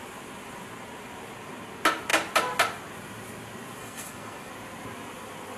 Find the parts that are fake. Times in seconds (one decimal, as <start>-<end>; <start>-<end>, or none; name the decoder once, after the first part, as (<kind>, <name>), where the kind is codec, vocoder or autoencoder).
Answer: 3.8-4.5 (codec, SNAC)